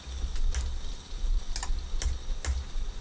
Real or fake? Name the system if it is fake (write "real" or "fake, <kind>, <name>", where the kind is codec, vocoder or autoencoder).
real